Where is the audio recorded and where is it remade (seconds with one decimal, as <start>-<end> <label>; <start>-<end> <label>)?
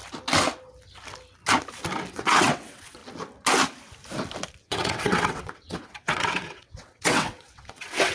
0.0-2.1 recorded; 2.1-3.0 remade; 3.0-4.6 recorded; 4.6-8.1 remade